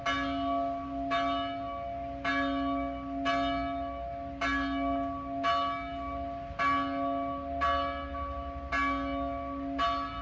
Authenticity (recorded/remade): recorded